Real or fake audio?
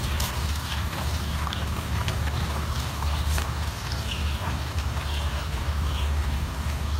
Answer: fake